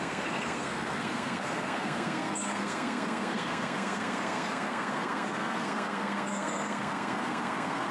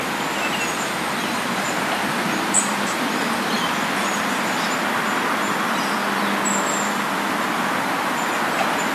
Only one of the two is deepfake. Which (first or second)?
first